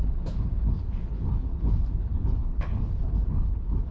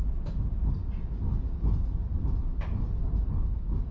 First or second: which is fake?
first